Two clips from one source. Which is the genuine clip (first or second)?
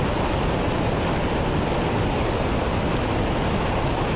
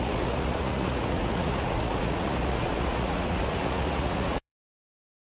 first